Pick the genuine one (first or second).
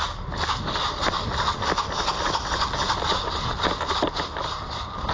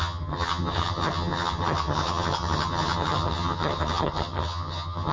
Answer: first